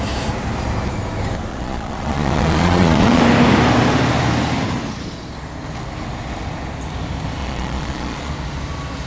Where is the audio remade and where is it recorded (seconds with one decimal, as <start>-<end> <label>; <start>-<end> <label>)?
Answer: 0.0-1.5 recorded; 1.5-3.2 remade; 3.2-7.4 recorded; 7.4-8.3 remade; 8.3-9.1 recorded